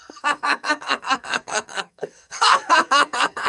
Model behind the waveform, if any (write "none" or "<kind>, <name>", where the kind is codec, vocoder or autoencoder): codec, SNAC